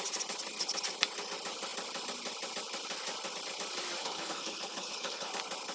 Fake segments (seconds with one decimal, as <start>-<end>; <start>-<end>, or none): 4.0-5.3